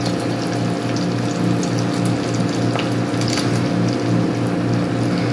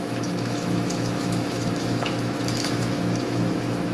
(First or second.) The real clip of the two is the first